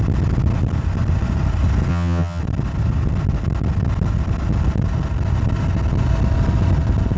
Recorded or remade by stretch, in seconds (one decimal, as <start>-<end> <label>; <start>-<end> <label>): 0.0-1.9 recorded; 1.9-2.4 remade; 2.4-7.2 recorded